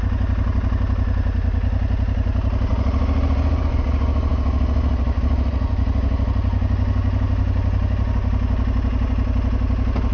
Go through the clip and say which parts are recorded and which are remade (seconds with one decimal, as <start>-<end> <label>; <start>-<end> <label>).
0.0-10.1 recorded